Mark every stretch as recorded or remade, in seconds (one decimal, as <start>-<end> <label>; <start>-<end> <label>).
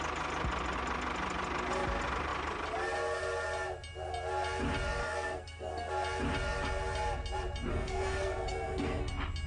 0.0-5.0 recorded; 5.0-5.9 remade; 5.9-7.7 recorded; 7.7-9.1 remade; 9.1-9.5 recorded